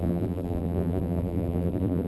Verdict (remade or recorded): remade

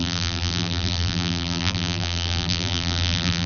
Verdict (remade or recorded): remade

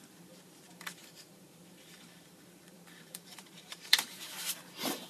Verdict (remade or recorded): remade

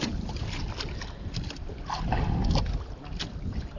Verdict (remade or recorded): recorded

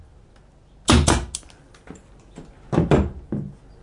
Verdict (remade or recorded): recorded